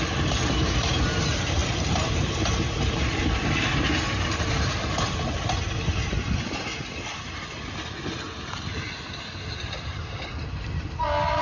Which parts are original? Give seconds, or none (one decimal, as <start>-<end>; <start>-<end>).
0.0-11.4